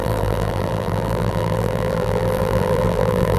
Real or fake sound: fake